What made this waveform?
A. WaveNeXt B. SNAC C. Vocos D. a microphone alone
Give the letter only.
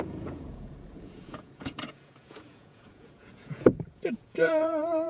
C